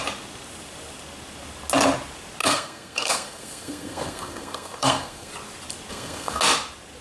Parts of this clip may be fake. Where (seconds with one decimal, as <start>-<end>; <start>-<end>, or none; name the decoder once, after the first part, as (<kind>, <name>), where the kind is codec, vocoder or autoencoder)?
2.4-5.3 (codec, SNAC); 5.9-6.4